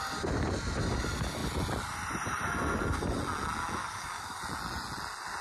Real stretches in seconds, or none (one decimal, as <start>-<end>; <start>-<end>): 0.0-3.8; 4.4-5.4